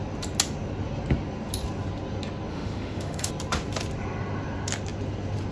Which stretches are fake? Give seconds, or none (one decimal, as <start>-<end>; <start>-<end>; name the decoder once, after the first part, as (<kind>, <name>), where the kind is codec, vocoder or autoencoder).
2.5-3.3 (autoencoder, DAC-VAE)